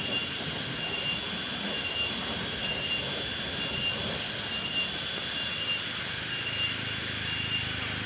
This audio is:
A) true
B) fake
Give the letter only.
A